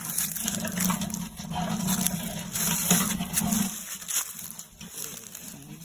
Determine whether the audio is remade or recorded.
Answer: recorded